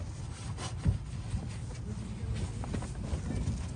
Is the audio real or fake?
real